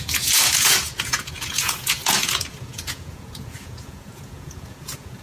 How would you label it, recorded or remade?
remade